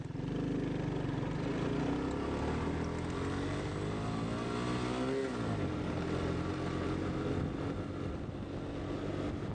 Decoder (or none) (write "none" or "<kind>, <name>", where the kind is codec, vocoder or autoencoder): none